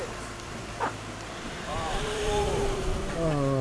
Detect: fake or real fake